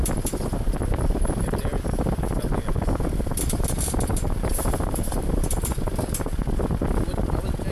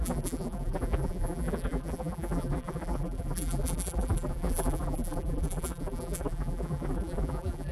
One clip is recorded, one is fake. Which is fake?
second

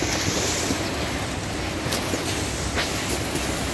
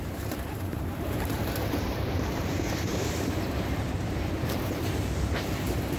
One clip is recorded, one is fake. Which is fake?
second